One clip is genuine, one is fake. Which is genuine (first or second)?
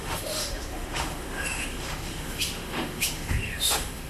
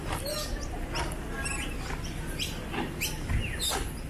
second